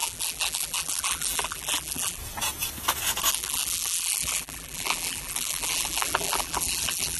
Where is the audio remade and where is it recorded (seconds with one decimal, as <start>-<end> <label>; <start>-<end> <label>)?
0.0-2.2 remade; 2.2-3.3 recorded; 3.3-7.2 remade

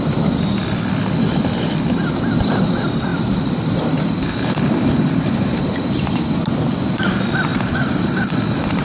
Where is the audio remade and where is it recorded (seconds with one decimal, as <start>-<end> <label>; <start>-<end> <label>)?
0.0-2.0 recorded; 2.0-2.5 remade; 2.5-3.1 recorded; 3.1-6.1 remade; 6.1-7.5 recorded; 7.5-8.3 remade; 8.3-8.8 recorded

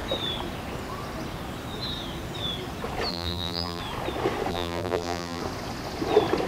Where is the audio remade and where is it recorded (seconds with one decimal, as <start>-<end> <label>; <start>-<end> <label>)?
0.0-3.1 recorded; 3.1-3.8 remade; 3.8-4.5 recorded; 4.5-5.4 remade; 5.4-6.5 recorded